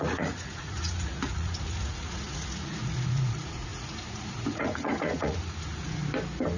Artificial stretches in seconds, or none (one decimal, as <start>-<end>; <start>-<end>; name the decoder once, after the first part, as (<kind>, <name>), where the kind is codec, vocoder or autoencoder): 0.0-6.0 (vocoder, Vocos)